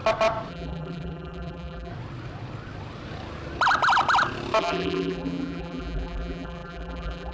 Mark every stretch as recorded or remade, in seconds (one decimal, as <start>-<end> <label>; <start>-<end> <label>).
0.0-0.5 recorded; 0.5-1.9 remade; 1.9-4.6 recorded; 4.6-7.3 remade